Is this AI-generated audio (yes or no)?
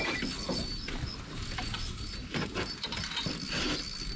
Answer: no